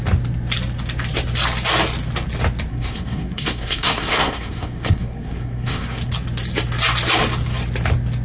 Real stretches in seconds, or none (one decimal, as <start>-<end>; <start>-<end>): 0.0-2.7; 6.1-8.2